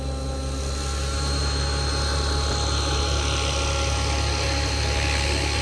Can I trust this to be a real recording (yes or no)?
yes